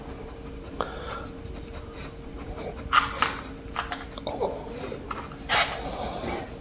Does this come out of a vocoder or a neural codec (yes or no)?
no